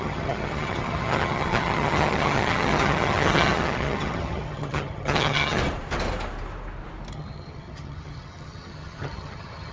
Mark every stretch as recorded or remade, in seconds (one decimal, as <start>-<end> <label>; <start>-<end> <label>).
0.0-5.6 remade; 5.6-7.1 recorded; 7.1-9.7 remade